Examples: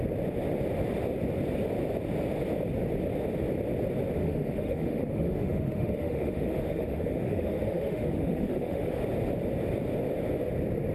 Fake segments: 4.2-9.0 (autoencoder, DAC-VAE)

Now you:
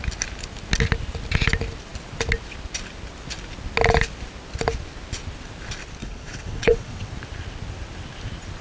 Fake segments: 6.0-7.1 (vocoder, WaveNeXt)

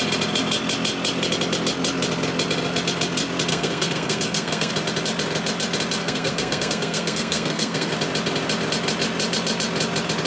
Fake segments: 3.5-4.7 (codec, SNAC); 6.0-7.9

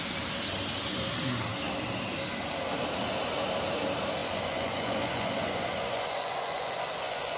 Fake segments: 4.2-7.4 (vocoder, Vocos)